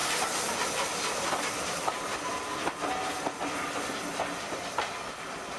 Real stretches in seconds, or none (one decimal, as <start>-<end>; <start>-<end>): 0.0-1.4; 2.1-5.6